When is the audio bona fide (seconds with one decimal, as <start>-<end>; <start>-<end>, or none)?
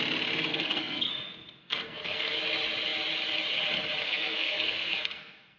0.0-0.5; 1.1-1.6; 2.4-4.0